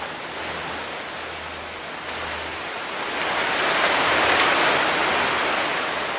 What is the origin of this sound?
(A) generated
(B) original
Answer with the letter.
B